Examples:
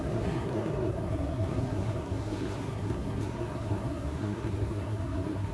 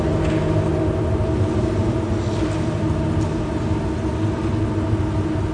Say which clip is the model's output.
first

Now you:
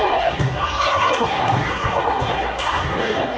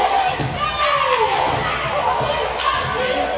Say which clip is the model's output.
first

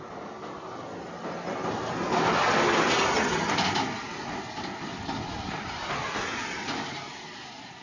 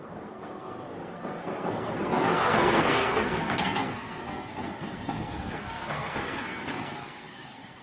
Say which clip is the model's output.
second